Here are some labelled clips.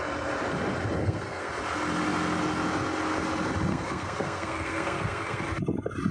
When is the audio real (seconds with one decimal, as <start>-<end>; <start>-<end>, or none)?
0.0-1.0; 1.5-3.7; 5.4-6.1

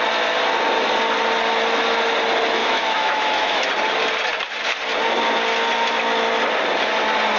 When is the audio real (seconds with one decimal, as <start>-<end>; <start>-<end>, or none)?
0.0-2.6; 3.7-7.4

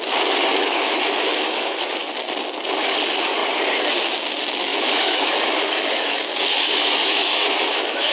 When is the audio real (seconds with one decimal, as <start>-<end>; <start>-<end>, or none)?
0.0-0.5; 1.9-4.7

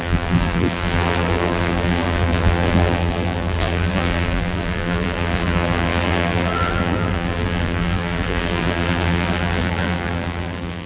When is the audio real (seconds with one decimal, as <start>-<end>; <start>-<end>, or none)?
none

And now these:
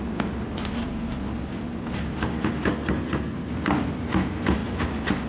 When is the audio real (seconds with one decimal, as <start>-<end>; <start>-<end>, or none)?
0.0-2.7; 3.5-5.3

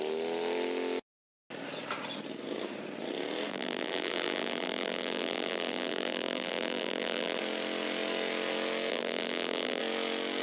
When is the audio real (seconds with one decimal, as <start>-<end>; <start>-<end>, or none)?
0.0-3.5; 7.4-8.9; 9.8-10.4

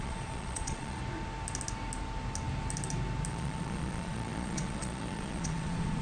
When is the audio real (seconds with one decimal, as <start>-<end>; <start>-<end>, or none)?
1.0-3.3